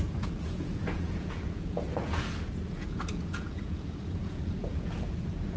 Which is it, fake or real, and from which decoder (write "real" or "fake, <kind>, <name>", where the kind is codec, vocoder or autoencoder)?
fake, vocoder, Vocos